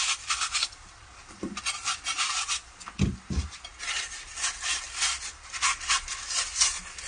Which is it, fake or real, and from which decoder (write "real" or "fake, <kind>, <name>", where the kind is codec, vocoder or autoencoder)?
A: real